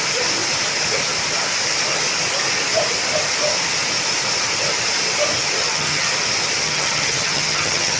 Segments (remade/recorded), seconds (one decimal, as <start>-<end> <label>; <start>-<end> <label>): 0.0-5.6 recorded; 5.6-6.1 remade; 6.1-6.6 recorded; 6.6-8.0 remade